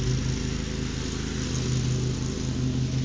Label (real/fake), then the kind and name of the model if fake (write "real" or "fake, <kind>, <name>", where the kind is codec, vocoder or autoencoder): real